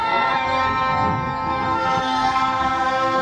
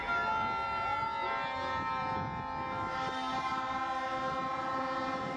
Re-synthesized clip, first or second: first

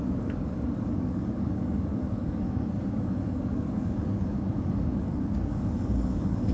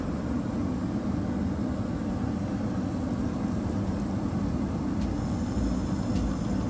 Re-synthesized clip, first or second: first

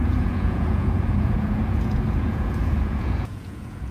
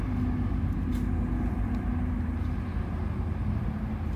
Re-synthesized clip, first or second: first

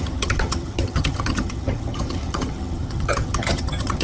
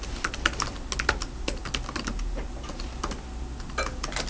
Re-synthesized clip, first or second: first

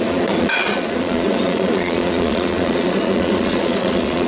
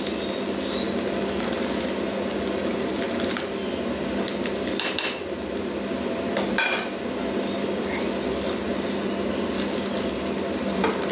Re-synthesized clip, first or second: first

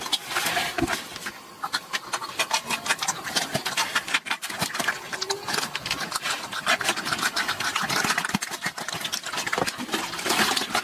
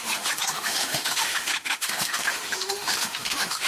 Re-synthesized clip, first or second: second